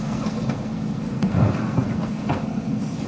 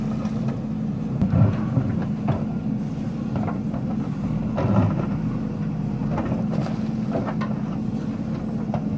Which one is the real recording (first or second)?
second